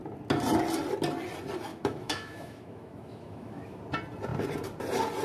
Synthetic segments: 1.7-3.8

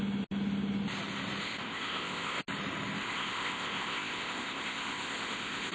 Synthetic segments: 1.4-2.4; 3.0-5.7

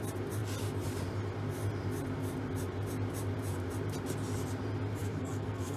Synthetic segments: 5.0-5.8

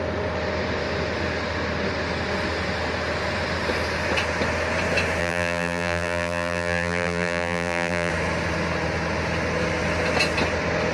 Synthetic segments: 5.2-8.1

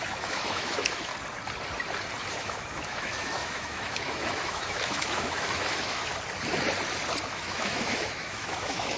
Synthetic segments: 0.0-1.1; 2.3-6.1; 7.3-9.0

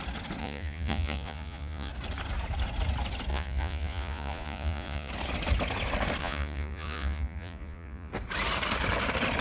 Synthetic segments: 0.4-1.9; 3.3-5.1; 6.2-8.1